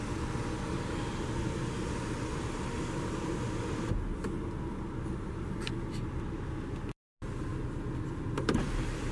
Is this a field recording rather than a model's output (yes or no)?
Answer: yes